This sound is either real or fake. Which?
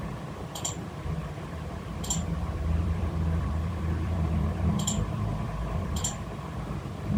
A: fake